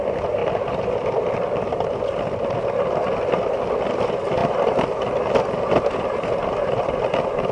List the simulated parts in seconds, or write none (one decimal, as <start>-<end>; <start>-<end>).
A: none